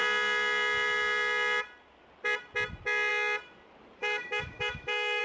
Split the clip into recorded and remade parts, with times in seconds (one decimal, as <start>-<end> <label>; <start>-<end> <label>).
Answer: 0.0-4.0 recorded; 4.0-5.2 remade